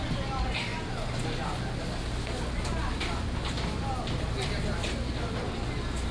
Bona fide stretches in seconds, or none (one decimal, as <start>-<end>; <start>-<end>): 0.0-6.1